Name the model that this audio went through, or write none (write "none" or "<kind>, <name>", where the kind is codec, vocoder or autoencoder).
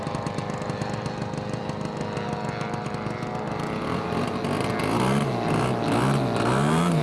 none